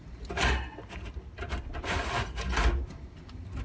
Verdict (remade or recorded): recorded